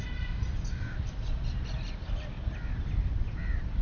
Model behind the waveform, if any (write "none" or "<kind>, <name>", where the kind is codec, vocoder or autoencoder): vocoder, BigVGAN v2